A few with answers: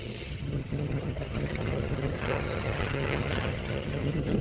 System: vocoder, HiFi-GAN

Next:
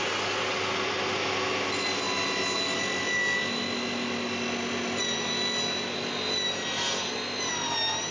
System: none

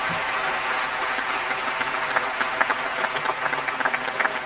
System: none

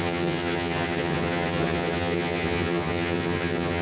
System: vocoder, HiFi-GAN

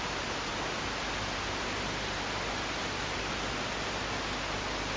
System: none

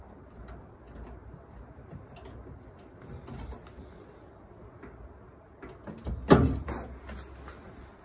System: none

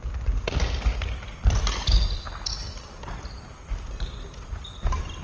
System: none